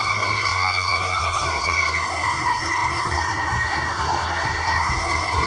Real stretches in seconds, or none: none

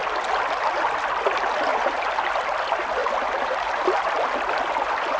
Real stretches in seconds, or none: 0.0-5.2